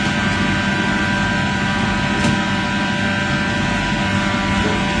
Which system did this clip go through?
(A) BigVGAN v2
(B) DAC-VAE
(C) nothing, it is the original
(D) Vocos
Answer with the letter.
C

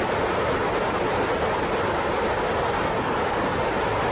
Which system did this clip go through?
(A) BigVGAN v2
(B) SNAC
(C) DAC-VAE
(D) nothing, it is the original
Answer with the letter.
D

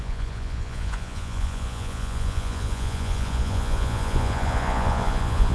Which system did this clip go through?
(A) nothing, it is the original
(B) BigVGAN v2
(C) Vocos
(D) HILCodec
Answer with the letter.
C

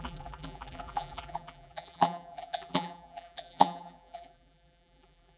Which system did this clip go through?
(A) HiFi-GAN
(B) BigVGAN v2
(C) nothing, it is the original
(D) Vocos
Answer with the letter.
B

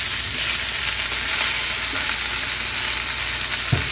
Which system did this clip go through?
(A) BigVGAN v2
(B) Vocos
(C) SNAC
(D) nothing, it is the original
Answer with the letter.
D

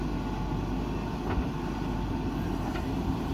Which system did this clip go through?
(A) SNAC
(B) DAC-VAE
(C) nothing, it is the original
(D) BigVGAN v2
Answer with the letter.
C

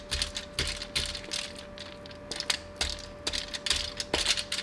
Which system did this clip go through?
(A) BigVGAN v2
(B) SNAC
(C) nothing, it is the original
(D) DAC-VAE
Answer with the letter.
C